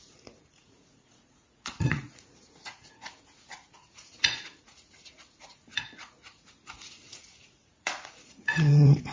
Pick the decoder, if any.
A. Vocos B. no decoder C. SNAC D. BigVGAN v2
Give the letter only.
A